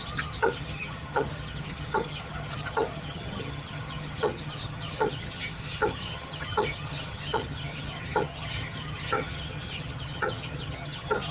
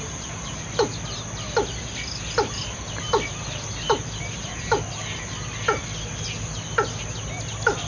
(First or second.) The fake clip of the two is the first